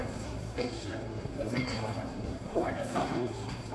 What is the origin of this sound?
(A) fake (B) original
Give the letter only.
A